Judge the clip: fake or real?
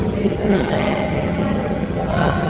fake